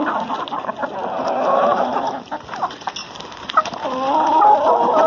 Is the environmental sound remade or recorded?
recorded